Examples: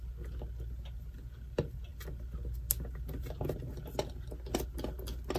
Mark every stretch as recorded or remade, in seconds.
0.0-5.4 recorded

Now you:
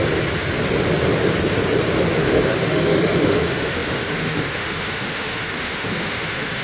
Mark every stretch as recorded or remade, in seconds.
0.0-2.2 recorded; 2.2-6.6 remade

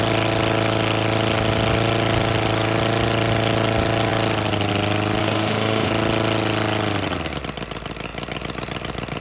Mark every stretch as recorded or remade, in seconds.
0.0-5.2 recorded; 5.2-5.9 remade; 5.9-9.2 recorded

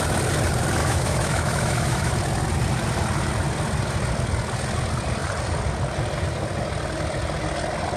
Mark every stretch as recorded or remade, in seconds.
0.0-0.8 recorded; 0.8-2.1 remade; 2.1-8.0 recorded

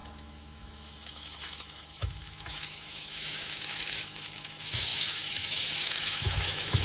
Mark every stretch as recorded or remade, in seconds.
0.0-6.8 remade

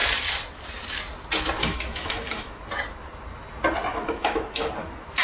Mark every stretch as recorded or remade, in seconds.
0.0-1.6 recorded; 1.6-2.6 remade; 2.6-3.9 recorded; 3.9-4.7 remade; 4.7-5.2 recorded

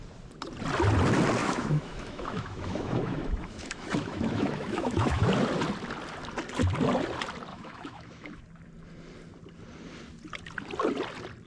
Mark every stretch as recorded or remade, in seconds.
0.0-1.4 recorded; 1.4-5.3 remade; 5.3-7.5 recorded; 7.5-8.4 remade; 8.4-11.5 recorded